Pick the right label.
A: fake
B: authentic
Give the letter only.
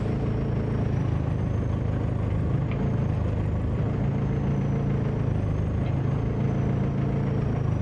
B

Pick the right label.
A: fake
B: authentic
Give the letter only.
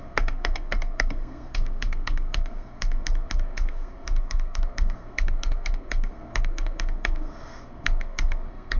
A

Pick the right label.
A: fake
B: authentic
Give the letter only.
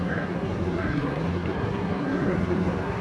A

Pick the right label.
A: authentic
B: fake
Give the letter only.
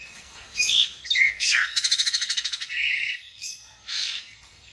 B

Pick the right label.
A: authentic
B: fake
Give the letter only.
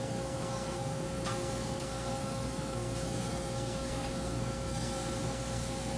B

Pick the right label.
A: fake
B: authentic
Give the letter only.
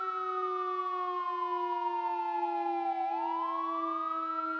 B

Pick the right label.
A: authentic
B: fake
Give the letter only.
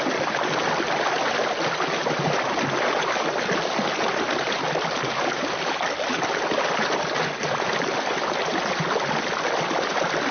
A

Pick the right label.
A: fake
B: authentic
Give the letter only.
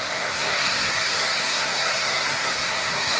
A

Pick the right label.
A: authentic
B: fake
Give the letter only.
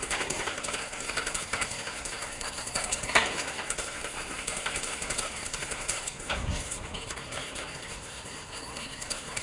B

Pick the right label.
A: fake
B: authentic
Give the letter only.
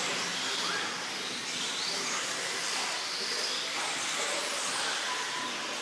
B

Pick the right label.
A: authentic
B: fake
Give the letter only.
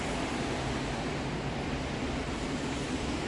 A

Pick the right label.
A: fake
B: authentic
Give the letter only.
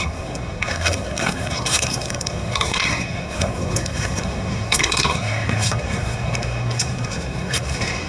A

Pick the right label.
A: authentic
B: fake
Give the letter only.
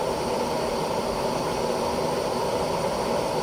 A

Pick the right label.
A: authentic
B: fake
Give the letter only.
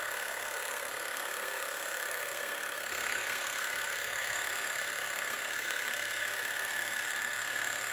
B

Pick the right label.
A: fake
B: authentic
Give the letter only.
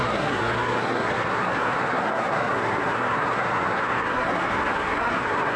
A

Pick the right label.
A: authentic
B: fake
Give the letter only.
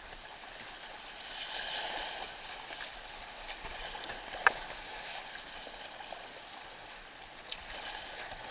A